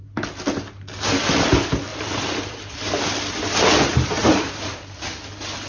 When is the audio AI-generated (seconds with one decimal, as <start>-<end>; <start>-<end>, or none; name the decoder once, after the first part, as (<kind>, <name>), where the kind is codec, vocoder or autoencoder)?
1.9-3.0 (vocoder, BigVGAN v2); 4.2-4.8